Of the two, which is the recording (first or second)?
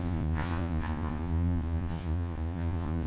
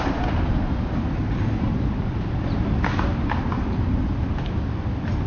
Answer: second